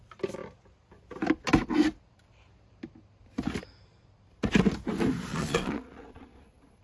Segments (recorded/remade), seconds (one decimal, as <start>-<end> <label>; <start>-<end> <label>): 0.0-5.3 recorded; 5.3-6.8 remade